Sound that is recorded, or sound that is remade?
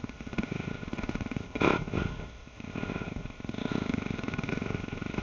remade